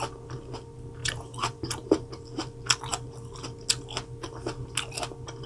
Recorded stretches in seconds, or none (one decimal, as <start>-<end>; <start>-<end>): 0.0-1.0; 2.1-5.5